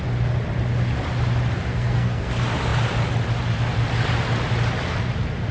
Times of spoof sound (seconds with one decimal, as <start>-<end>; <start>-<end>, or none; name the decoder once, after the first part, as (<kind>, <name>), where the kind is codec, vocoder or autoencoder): 1.7-2.3 (codec, SNAC)